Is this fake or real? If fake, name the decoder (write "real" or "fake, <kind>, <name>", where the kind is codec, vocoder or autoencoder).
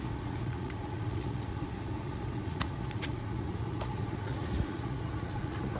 fake, vocoder, Vocos